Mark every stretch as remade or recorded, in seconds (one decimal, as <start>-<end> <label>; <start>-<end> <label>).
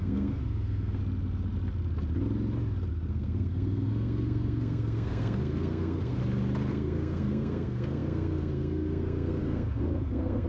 0.0-1.0 remade; 1.0-2.9 recorded; 2.9-6.2 remade; 6.2-6.7 recorded; 6.7-10.5 remade